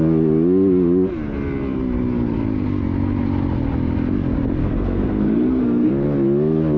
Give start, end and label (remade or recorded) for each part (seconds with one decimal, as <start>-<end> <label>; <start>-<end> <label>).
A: 0.0-4.6 recorded; 4.6-5.9 remade; 5.9-6.8 recorded